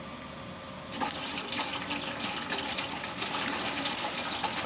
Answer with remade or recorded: recorded